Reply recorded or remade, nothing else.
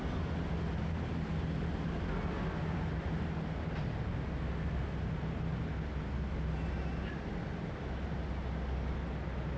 recorded